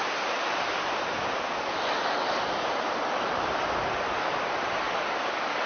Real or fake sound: real